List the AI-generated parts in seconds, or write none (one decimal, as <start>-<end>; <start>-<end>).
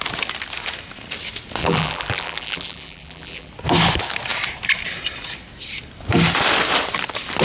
1.6-3.5